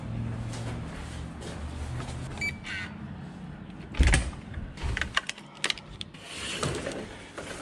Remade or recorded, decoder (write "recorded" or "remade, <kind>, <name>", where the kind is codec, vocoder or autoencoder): recorded